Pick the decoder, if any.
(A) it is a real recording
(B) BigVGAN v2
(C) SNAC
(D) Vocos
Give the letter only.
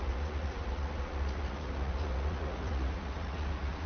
D